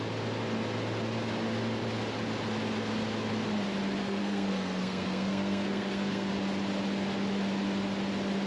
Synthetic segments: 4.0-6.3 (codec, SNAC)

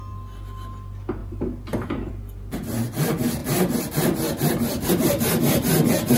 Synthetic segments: 1.2-2.1 (vocoder, BigVGAN v2); 3.4-6.2

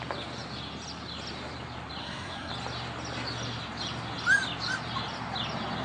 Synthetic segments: 2.0-2.5 (codec, SNAC)

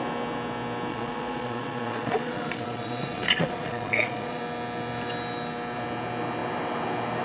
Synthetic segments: 0.9-4.4 (vocoder, Vocos)

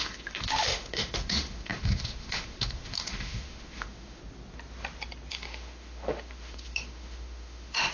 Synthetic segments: 0.0-4.2 (autoencoder, DAC-VAE); 5.3-7.9

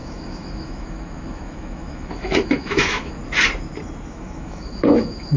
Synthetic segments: 0.0-3.2 (autoencoder, DAC-VAE); 4.1-5.4